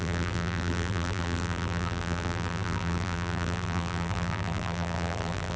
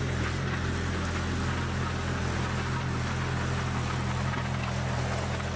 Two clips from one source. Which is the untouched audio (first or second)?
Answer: second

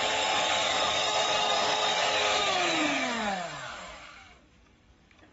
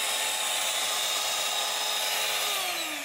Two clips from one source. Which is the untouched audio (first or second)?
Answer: second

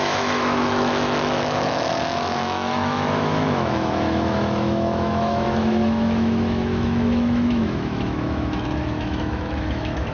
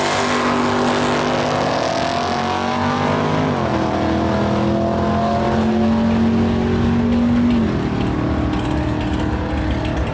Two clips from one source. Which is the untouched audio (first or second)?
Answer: second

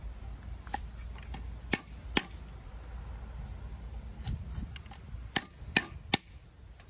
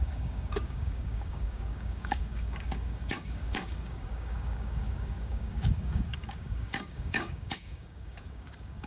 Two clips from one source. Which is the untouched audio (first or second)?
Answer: first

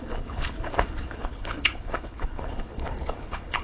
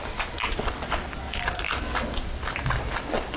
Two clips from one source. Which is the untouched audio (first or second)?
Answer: second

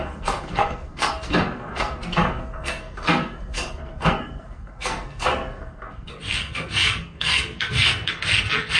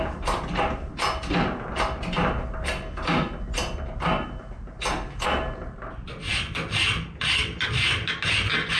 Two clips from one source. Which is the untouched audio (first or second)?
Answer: second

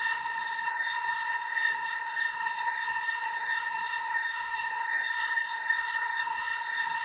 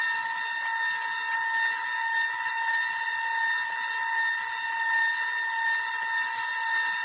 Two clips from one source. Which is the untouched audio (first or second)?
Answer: second